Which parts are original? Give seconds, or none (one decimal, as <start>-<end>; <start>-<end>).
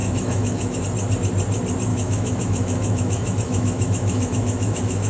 0.8-1.9